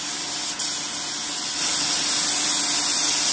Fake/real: real